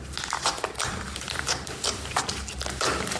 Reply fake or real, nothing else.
real